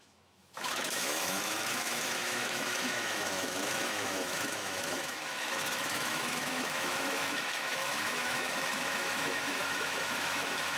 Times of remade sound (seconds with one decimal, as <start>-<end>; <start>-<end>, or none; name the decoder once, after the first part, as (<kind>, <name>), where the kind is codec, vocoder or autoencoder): 0.0-10.8 (autoencoder, DAC-VAE)